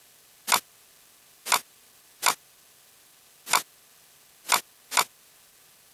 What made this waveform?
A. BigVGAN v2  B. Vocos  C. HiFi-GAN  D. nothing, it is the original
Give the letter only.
D